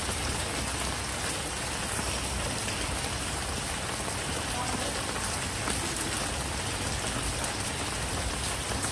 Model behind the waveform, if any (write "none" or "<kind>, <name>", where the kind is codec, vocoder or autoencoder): none